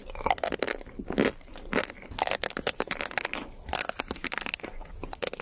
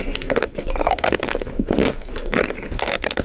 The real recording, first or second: first